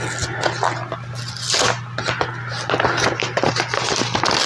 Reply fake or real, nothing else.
real